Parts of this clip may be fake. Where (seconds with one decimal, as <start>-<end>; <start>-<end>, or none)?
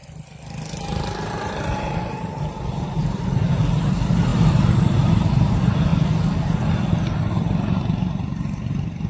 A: 0.8-5.9; 7.3-9.1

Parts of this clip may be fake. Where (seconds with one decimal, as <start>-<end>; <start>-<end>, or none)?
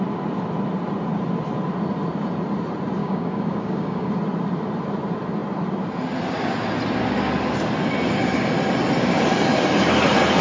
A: 3.0-4.1